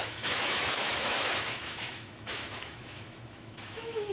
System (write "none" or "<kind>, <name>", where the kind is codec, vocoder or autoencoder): autoencoder, DAC-VAE